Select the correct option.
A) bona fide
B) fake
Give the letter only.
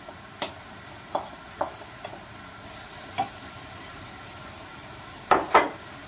B